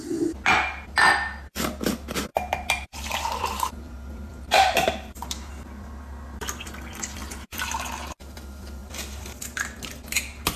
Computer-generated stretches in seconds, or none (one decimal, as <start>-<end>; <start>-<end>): 2.3-5.5; 7.2-7.9